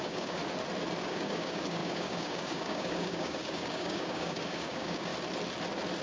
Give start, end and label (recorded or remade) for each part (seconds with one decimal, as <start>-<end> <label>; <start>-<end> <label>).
0.0-0.4 remade; 0.4-1.0 recorded; 1.0-5.1 remade; 5.1-6.0 recorded